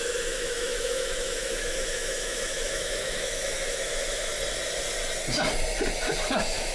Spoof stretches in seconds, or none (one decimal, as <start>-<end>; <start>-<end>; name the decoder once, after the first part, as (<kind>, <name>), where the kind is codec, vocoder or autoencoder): 0.0-4.3 (autoencoder, DAC-VAE); 6.2-6.7